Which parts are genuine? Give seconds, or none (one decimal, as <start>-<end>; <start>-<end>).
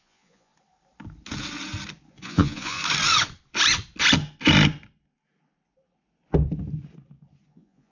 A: 0.5-2.1; 2.8-7.5